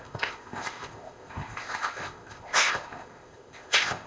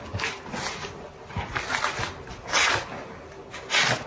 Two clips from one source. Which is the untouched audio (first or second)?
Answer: second